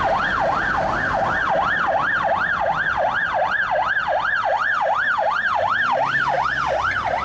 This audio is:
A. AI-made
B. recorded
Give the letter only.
B